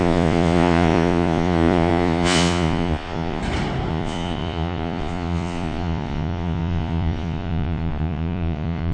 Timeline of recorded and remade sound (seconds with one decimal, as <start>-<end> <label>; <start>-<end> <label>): 0.0-3.4 remade; 3.4-3.9 recorded; 3.9-8.9 remade